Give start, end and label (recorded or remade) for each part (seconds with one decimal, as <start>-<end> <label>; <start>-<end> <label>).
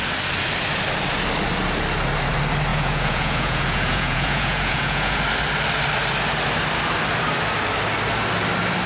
0.0-2.7 recorded; 2.7-5.2 remade; 5.2-8.9 recorded